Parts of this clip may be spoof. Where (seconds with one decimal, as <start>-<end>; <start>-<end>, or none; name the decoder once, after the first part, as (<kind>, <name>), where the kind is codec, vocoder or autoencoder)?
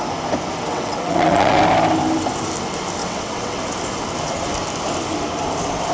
0.7-1.6 (vocoder, WaveNeXt); 3.0-3.6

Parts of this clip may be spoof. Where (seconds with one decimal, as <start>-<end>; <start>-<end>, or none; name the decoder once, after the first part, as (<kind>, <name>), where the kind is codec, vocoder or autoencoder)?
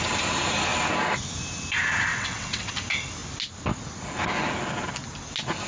2.1-2.7 (vocoder, WaveNeXt)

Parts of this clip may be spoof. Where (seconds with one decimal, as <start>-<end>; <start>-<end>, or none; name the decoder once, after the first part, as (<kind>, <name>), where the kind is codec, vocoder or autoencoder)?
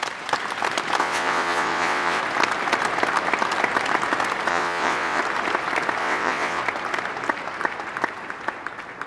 1.0-2.2 (vocoder, WaveNeXt); 4.5-5.2; 6.0-6.6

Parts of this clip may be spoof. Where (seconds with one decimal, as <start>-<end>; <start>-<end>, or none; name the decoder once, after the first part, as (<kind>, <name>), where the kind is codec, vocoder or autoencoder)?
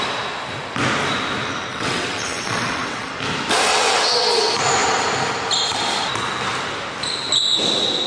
1.7-3.1 (vocoder, WaveNeXt); 3.7-4.3